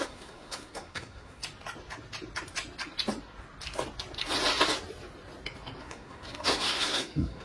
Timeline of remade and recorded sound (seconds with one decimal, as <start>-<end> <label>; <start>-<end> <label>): 0.0-1.4 remade; 1.4-5.8 recorded; 5.8-7.4 remade